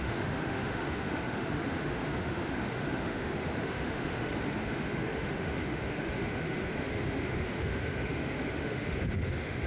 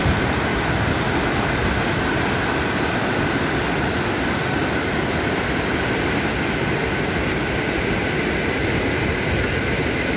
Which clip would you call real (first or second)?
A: second